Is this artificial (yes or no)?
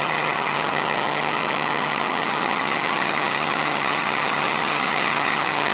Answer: yes